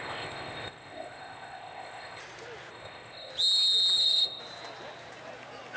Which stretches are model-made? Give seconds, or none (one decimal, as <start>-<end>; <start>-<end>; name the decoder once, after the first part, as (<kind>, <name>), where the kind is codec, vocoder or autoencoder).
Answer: 0.0-2.2 (codec, ZipCodec); 2.7-3.3; 4.0-4.4